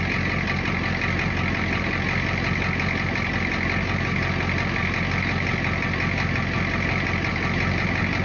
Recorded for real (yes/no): yes